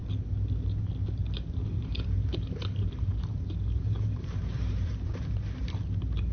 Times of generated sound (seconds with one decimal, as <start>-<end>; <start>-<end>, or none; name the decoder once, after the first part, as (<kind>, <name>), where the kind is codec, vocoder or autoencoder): 1.8-5.6 (vocoder, BigVGAN v2)

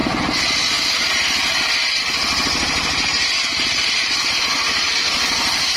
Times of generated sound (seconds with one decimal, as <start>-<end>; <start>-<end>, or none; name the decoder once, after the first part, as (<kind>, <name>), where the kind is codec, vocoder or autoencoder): none